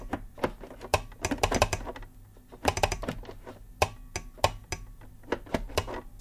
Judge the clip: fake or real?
real